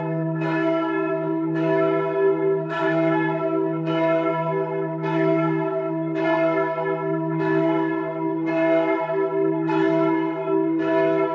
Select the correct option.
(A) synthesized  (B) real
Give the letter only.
A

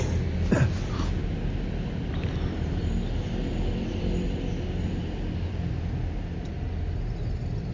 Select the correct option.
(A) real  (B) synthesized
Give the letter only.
A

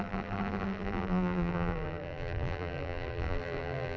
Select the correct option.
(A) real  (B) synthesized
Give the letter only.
B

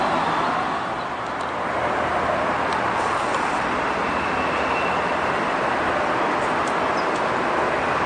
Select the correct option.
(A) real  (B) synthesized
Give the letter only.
A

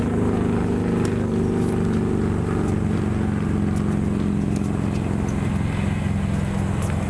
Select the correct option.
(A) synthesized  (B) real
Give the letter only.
B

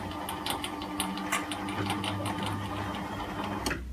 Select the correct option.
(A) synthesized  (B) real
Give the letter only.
B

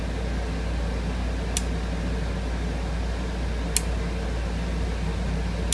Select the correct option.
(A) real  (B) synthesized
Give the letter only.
A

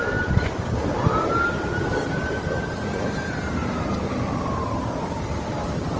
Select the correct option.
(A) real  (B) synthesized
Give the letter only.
A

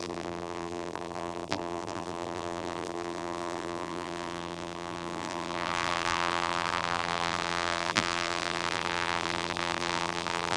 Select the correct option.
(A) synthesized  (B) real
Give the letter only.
A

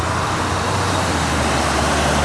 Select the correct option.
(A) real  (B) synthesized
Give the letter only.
A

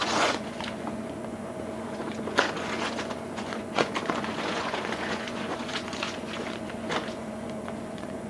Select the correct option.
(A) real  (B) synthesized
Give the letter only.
B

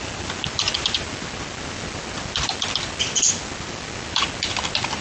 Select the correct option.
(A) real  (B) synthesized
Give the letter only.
A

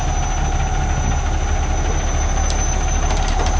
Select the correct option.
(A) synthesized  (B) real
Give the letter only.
B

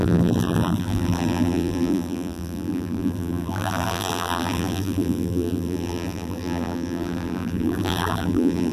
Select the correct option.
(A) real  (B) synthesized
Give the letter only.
B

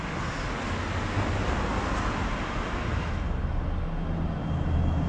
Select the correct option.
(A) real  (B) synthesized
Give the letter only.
A